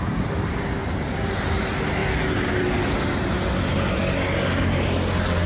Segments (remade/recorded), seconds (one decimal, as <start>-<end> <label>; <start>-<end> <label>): 0.0-0.8 recorded; 0.8-1.3 remade; 1.3-5.5 recorded